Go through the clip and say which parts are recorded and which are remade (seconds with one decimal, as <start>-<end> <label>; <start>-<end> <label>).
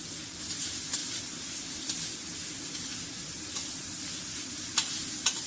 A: 0.0-1.0 recorded; 1.0-4.3 remade; 4.3-5.5 recorded